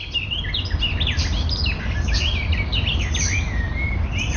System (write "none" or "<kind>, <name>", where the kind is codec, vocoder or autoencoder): none